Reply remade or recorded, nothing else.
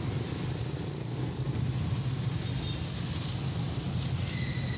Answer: recorded